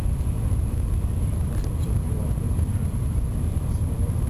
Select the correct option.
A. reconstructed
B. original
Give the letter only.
A